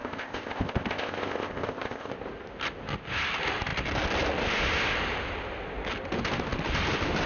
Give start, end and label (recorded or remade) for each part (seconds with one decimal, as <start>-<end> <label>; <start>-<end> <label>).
0.0-2.1 remade; 2.1-7.3 recorded